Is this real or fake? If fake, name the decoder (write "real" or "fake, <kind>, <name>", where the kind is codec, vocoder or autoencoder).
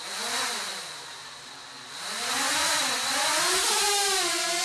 real